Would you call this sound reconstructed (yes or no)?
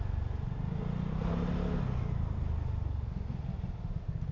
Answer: no